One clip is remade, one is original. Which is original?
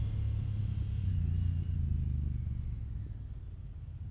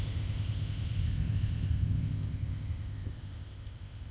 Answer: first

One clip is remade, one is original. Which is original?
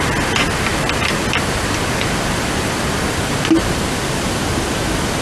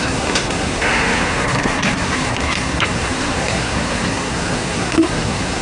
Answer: first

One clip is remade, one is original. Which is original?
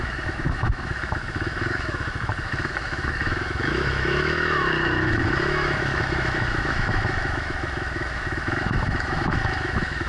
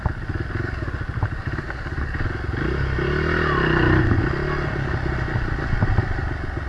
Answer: second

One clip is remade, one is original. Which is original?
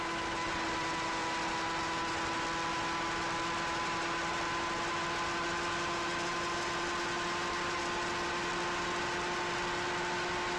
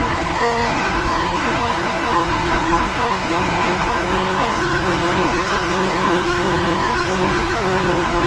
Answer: first